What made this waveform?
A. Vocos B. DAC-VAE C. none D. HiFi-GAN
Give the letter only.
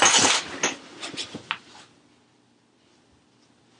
C